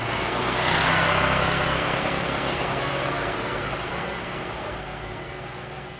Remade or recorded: remade